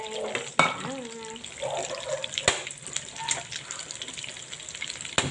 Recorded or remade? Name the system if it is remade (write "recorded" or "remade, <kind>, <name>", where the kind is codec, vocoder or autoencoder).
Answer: recorded